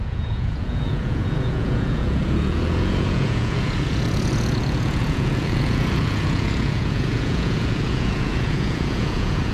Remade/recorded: remade